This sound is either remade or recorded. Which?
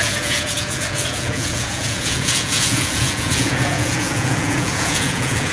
remade